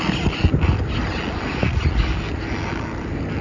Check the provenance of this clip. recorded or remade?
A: recorded